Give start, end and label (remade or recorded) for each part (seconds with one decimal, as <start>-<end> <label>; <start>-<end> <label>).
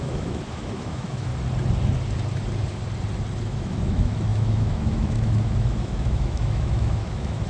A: 0.0-1.3 remade; 1.3-3.4 recorded; 3.4-7.5 remade